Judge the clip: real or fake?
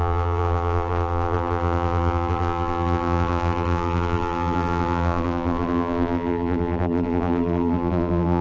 fake